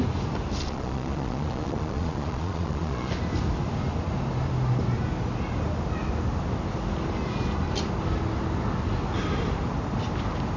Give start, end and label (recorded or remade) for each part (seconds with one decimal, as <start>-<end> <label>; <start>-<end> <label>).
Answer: 0.0-0.6 recorded; 0.6-3.1 remade; 3.1-10.6 recorded